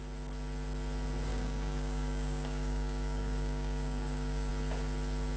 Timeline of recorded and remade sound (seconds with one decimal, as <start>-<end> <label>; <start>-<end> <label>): 0.0-1.3 recorded; 1.3-4.5 remade; 4.5-5.4 recorded